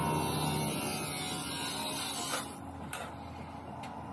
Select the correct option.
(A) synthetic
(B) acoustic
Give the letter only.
B